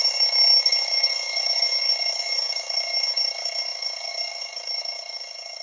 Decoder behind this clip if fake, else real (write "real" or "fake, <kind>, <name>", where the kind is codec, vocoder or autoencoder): fake, codec, DAC